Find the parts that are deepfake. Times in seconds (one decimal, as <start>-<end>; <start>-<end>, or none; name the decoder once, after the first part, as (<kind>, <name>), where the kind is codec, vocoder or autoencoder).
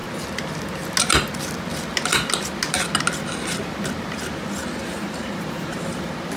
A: 4.9-5.8 (vocoder, BigVGAN v2)